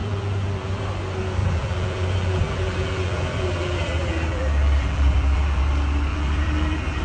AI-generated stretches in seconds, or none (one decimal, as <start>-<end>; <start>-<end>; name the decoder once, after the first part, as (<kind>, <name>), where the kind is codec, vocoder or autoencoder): 0.0-0.8 (vocoder, BigVGAN v2); 1.4-5.6; 6.1-7.0